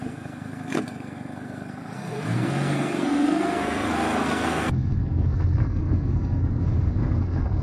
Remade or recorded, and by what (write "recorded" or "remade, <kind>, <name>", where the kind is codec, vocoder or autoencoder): remade, codec, SNAC